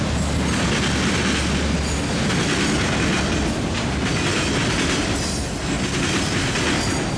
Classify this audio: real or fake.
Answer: real